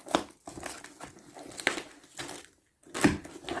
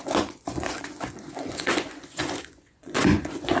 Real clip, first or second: first